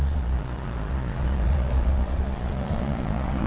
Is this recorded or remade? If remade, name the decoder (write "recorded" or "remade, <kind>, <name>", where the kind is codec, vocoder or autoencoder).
remade, vocoder, Vocos